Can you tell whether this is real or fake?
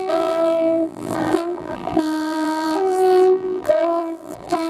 fake